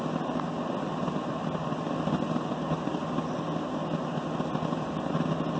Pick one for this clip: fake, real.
real